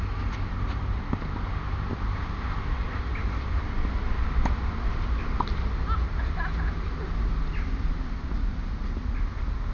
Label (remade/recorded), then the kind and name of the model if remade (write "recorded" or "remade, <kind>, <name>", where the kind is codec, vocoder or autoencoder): recorded